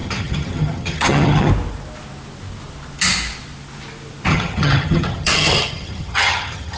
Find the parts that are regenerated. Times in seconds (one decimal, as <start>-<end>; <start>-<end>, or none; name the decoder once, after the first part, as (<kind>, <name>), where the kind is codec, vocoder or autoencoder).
0.0-1.5 (vocoder, HiFi-GAN); 4.3-6.8